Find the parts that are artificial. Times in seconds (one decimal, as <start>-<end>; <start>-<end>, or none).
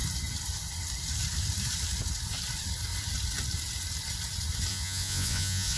4.7-5.8